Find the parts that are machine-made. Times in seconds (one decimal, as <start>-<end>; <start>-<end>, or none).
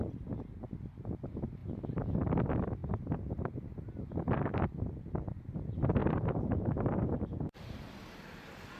1.6-2.3; 2.8-3.5; 6.0-7.9